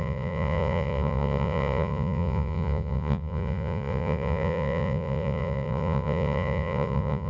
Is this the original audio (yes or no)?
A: no